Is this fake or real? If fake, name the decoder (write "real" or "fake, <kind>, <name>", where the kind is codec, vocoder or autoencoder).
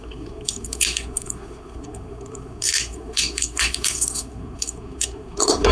fake, codec, SNAC